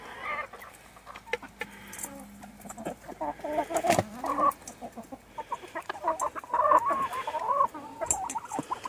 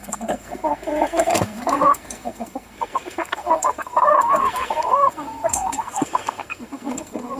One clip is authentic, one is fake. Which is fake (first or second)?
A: second